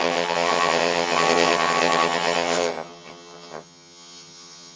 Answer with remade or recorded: remade